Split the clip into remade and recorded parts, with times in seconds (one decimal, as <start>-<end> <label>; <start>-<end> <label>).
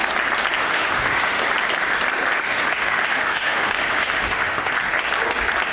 0.0-0.6 recorded; 0.6-1.4 remade; 1.4-2.4 recorded; 2.4-4.7 remade; 4.7-5.7 recorded